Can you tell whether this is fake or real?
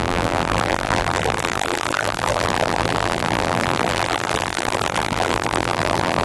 fake